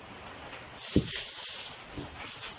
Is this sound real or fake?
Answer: real